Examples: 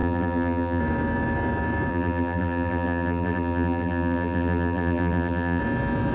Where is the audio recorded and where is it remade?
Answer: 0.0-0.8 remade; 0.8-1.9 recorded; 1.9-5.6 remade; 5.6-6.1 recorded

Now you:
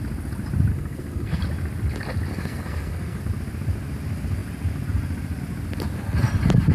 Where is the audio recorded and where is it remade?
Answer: 0.0-0.7 recorded; 0.7-1.4 remade; 1.4-2.3 recorded; 2.3-3.2 remade; 3.2-6.7 recorded